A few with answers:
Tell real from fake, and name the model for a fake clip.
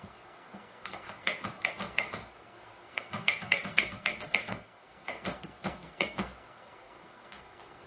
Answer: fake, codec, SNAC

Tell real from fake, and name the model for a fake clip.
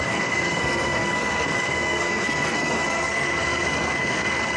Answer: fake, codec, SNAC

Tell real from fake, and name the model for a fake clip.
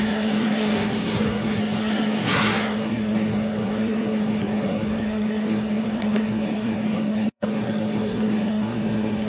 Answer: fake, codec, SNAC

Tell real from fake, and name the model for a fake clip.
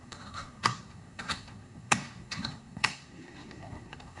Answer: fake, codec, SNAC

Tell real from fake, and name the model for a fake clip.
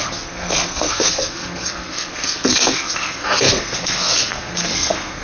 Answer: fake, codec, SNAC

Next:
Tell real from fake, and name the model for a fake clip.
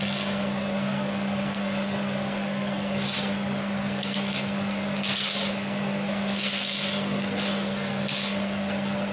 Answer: fake, codec, SNAC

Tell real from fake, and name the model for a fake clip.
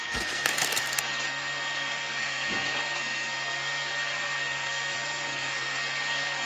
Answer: fake, codec, SNAC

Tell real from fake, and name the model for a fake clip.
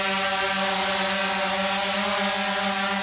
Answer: real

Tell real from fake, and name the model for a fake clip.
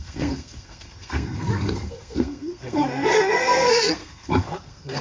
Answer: fake, codec, SNAC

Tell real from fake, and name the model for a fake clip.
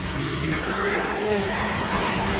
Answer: fake, codec, SNAC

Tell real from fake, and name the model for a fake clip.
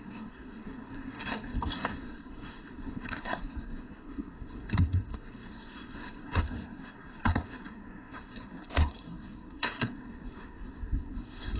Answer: fake, codec, SNAC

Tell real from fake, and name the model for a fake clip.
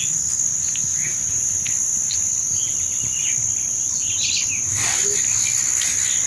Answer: real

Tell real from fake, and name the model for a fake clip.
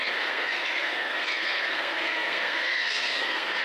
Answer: fake, codec, SNAC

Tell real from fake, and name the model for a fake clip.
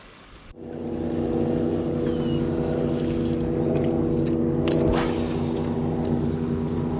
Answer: real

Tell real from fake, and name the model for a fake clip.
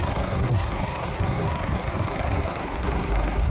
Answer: fake, codec, SNAC